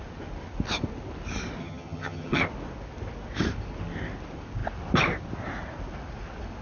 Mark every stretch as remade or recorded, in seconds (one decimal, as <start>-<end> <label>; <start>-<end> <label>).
0.0-1.6 recorded; 1.6-2.4 remade; 2.4-6.6 recorded